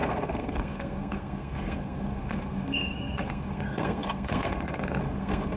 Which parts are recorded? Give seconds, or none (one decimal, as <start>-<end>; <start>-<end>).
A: none